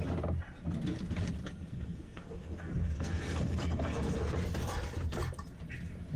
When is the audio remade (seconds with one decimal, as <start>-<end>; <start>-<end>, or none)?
1.5-4.3